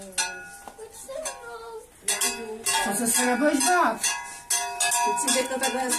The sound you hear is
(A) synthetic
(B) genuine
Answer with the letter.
B